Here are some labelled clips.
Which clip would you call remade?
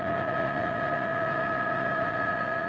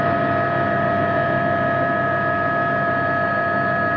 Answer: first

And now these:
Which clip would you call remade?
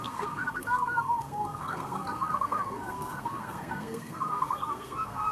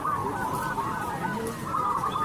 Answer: first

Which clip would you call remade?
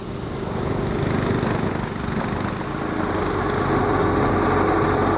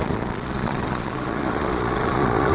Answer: second